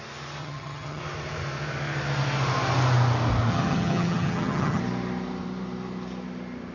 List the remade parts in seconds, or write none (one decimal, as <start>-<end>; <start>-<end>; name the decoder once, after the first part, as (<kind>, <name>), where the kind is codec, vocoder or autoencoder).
0.4-1.0 (vocoder, HiFi-GAN); 3.5-4.8